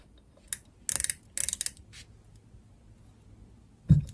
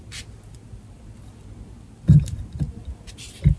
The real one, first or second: first